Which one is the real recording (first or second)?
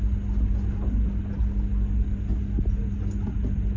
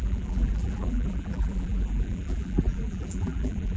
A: first